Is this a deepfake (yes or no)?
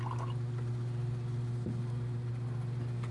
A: no